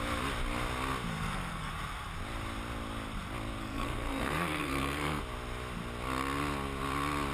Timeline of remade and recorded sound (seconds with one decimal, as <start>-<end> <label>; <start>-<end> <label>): 0.0-1.1 recorded; 1.1-1.7 remade; 1.7-3.6 recorded; 3.6-5.2 remade; 5.2-7.3 recorded